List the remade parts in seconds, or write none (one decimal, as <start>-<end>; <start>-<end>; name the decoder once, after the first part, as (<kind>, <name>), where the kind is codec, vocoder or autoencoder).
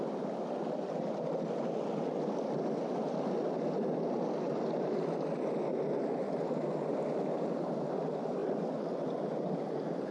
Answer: none